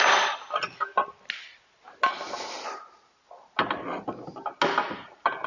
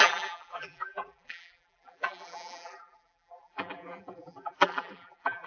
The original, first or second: first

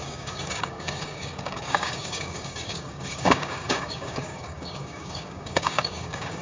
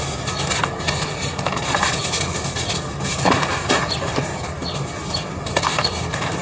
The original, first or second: second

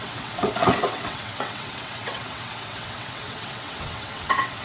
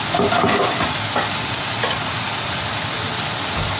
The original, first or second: second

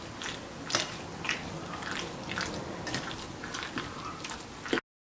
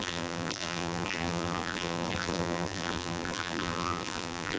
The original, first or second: first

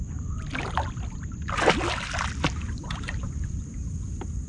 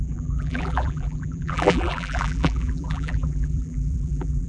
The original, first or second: first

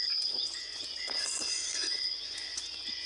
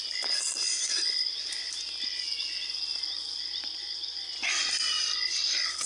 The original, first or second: second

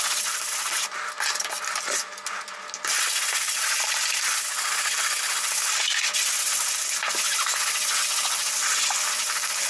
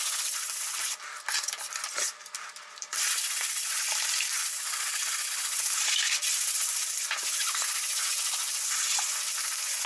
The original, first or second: first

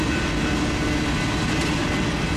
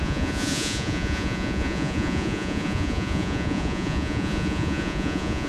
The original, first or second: first